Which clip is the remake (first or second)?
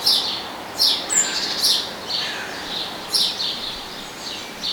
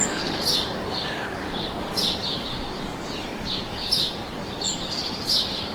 second